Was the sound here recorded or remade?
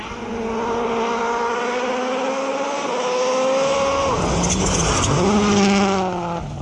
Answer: recorded